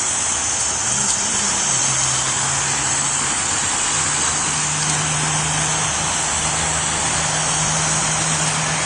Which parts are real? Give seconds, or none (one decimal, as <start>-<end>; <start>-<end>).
0.0-8.9